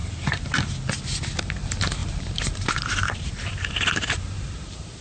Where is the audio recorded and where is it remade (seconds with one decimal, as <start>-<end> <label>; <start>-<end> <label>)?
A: 0.0-0.5 remade; 0.5-2.0 recorded; 2.0-3.5 remade; 3.5-5.0 recorded

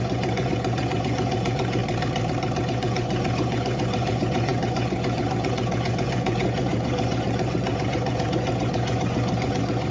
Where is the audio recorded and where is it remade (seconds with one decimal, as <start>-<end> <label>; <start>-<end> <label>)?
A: 0.0-1.8 remade; 1.8-2.6 recorded; 2.6-9.9 remade

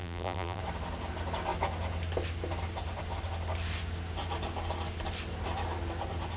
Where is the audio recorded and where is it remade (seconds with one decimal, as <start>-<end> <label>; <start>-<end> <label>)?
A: 0.0-0.6 remade; 0.6-6.4 recorded

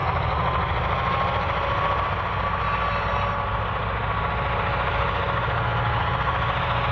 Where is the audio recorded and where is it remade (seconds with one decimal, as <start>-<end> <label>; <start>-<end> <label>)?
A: 0.0-6.9 recorded

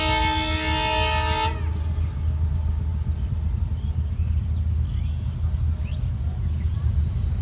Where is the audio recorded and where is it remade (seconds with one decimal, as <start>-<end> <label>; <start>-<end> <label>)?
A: 0.0-7.4 recorded